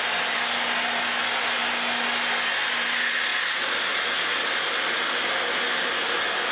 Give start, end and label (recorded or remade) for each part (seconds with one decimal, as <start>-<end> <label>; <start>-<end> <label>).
0.0-6.5 recorded